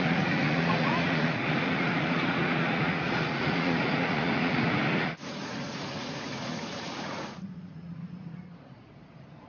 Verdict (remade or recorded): remade